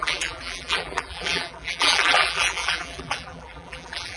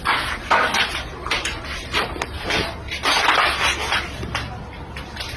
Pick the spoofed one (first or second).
first